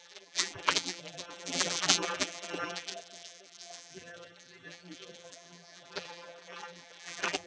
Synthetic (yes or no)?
yes